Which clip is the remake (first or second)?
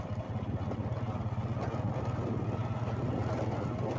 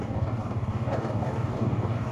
second